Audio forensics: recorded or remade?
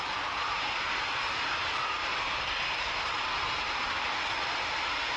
recorded